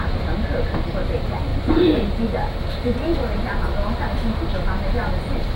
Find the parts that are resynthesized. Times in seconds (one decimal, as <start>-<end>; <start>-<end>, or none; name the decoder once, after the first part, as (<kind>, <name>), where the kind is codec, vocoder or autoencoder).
none